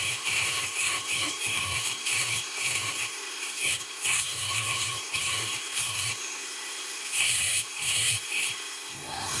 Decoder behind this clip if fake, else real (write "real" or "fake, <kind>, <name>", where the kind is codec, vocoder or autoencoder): fake, codec, SNAC